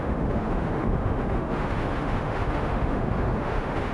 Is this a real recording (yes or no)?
no